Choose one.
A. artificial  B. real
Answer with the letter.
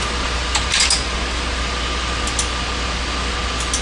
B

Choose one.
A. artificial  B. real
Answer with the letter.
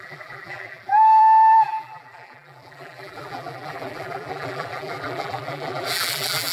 A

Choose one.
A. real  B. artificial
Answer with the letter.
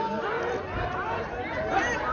A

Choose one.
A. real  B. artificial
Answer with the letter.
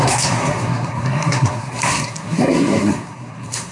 B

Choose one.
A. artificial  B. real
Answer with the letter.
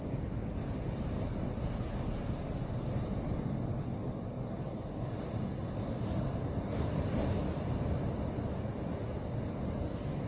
B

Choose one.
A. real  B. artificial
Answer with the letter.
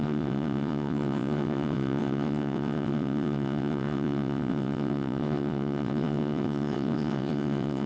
B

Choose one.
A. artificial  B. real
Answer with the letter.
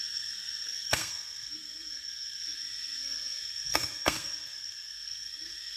A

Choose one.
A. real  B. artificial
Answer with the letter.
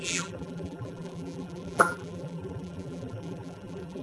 B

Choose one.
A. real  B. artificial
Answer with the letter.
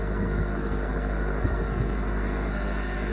B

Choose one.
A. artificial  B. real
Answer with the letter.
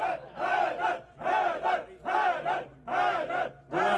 B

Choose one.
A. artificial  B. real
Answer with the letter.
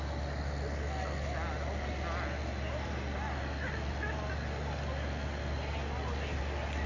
B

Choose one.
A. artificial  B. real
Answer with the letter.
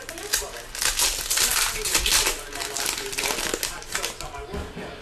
B